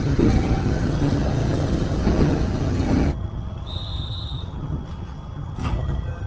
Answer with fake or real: fake